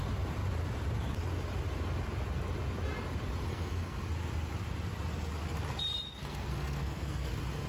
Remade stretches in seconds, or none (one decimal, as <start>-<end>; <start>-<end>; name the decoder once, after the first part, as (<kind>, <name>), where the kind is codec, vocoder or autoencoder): 3.5-4.0 (codec, SNAC); 6.2-7.3